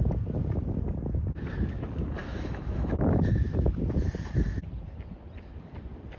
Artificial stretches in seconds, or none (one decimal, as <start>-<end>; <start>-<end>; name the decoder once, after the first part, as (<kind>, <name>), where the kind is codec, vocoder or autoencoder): 2.2-3.8 (autoencoder, DAC-VAE)